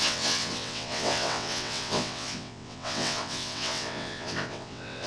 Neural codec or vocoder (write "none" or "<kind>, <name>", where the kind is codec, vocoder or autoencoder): vocoder, WaveNeXt